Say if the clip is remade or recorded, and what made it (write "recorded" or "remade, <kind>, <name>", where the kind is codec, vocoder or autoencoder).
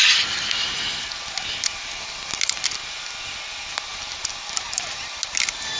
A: recorded